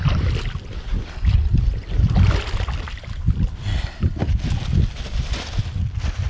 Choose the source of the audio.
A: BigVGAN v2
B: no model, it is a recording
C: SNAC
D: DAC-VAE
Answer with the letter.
B